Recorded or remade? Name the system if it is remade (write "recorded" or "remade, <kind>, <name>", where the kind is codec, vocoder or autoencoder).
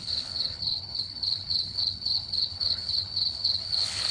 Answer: remade, codec, HILCodec